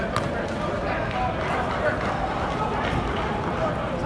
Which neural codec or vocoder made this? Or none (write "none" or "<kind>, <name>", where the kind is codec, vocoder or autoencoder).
none